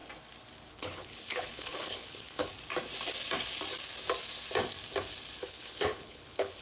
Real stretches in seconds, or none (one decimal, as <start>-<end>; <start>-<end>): 0.0-0.7; 2.5-5.4